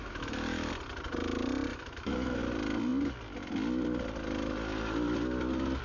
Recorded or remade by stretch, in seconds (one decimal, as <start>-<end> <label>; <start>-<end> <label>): 0.0-0.7 remade; 0.7-1.7 recorded; 1.7-2.4 remade; 2.4-5.8 recorded